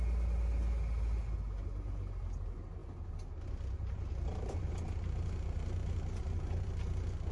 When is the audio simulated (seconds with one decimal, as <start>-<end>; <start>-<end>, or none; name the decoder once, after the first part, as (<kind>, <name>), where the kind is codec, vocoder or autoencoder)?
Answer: none